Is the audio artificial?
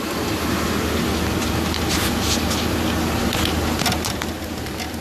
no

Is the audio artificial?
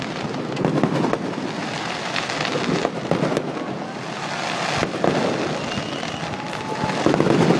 no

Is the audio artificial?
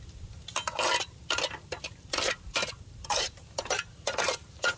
no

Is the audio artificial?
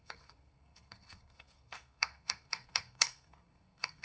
yes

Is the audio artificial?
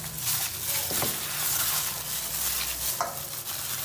no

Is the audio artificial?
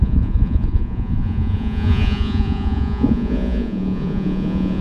yes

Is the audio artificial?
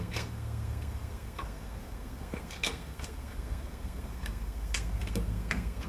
yes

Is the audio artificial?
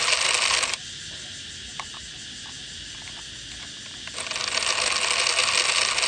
no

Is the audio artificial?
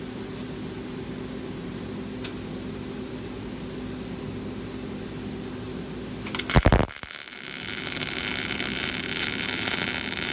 no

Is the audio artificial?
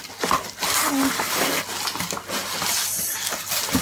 no